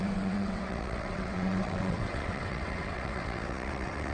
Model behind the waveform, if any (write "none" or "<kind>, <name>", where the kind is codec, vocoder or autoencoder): vocoder, WaveNeXt